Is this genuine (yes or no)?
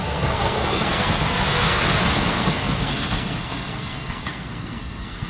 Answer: no